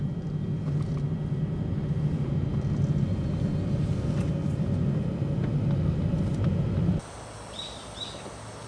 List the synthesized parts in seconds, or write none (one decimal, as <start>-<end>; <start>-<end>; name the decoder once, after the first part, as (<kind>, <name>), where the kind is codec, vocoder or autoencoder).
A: none